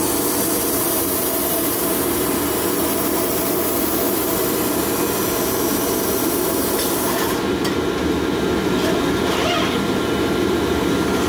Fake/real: real